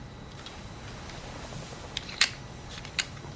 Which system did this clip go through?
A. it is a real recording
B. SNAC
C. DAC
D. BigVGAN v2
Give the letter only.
A